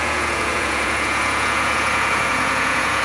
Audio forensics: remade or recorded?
remade